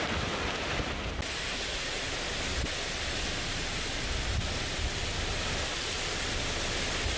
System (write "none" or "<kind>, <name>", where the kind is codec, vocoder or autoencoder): none